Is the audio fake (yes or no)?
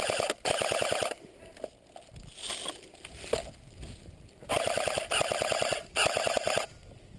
no